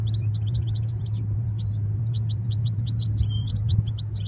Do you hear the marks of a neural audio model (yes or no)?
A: yes